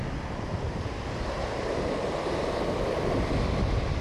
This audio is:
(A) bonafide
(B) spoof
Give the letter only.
A